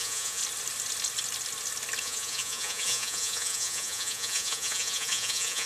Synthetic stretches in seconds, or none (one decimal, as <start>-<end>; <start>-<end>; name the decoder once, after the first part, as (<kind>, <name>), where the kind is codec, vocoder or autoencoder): 0.0-0.4 (vocoder, Vocos); 2.0-5.7